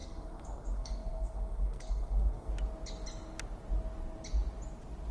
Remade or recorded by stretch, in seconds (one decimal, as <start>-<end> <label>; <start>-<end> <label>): 0.0-2.5 remade; 2.5-5.1 recorded